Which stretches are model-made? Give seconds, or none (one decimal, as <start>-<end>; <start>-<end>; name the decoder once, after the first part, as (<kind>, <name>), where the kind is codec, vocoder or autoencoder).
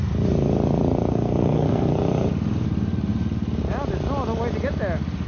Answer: 1.1-1.9 (codec, SNAC)